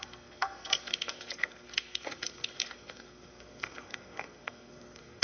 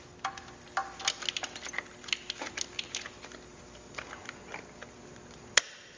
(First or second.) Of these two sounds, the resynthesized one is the first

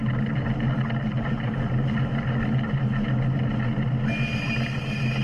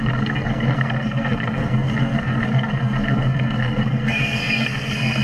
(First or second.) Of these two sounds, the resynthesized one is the second